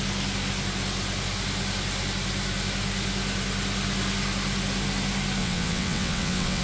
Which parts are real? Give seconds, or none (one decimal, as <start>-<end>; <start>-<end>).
0.0-5.4